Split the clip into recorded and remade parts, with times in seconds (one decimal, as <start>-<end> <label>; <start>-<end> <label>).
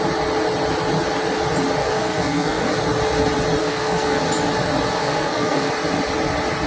0.0-1.8 recorded; 1.8-2.7 remade; 2.7-3.6 recorded; 3.6-4.2 remade; 4.2-5.0 recorded; 5.0-5.7 remade; 5.7-6.7 recorded